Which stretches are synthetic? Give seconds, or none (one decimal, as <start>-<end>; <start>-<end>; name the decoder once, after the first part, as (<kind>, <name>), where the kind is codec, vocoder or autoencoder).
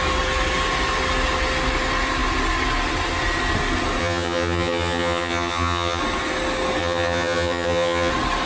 4.0-6.0 (vocoder, HiFi-GAN); 6.8-8.1